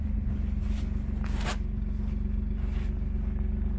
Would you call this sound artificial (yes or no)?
no